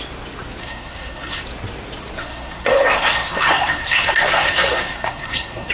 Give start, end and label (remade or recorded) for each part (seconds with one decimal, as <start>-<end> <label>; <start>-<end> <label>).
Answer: 0.0-0.6 recorded; 0.6-1.4 remade; 1.4-2.2 recorded; 2.2-5.7 remade